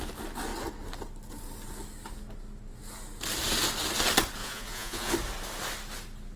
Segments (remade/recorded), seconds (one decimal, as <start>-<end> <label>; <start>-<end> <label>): 0.0-4.4 recorded; 4.4-5.1 remade; 5.1-6.4 recorded